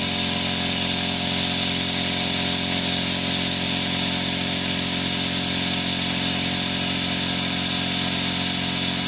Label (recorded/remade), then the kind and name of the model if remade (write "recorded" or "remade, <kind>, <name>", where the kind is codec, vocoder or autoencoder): recorded